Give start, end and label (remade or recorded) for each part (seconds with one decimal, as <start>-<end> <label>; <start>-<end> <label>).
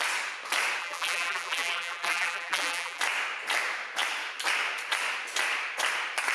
0.0-0.8 recorded; 0.8-3.0 remade; 3.0-6.3 recorded